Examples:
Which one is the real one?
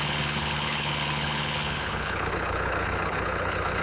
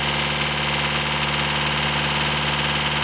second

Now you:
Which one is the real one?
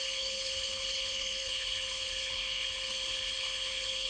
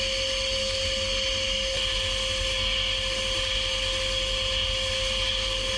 second